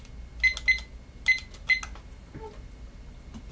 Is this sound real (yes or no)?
yes